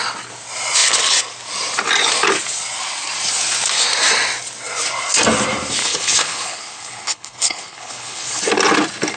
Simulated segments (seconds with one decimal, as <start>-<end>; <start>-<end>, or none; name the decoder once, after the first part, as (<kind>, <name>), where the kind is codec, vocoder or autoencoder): 5.8-8.4 (codec, HILCodec)